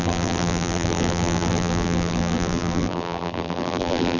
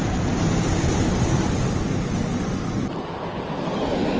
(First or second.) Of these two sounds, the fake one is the first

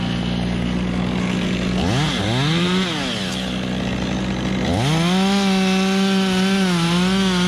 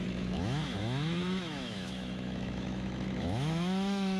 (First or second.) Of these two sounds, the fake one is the second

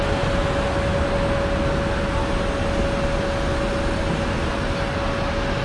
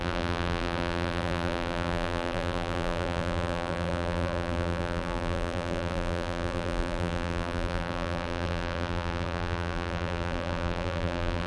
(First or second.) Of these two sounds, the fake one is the second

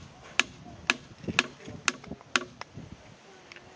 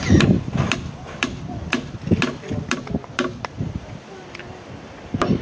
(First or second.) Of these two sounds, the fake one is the second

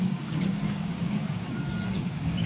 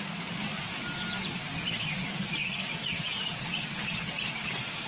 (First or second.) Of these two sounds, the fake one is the first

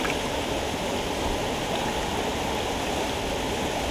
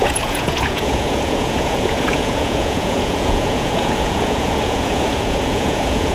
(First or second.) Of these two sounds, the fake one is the second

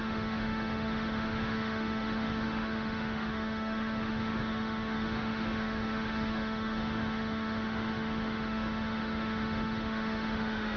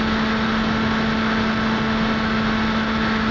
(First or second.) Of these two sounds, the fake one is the first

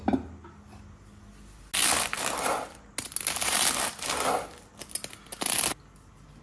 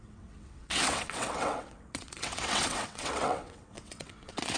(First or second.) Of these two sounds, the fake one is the second